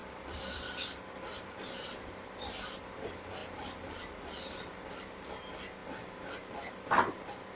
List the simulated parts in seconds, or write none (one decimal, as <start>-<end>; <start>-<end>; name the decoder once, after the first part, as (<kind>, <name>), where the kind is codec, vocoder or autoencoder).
0.0-1.4 (vocoder, BigVGAN v2); 3.4-4.0